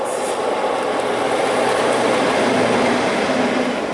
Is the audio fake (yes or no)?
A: no